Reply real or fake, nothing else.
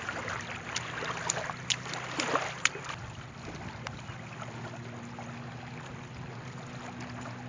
real